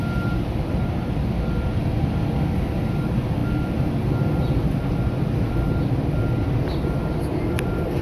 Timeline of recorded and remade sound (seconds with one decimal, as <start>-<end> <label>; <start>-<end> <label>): 0.0-8.0 recorded